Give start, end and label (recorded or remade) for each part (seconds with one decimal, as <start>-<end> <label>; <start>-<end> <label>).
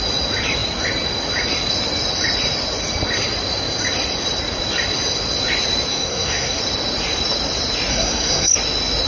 0.0-5.9 recorded; 5.9-6.6 remade; 6.6-7.9 recorded; 7.9-8.5 remade; 8.5-9.1 recorded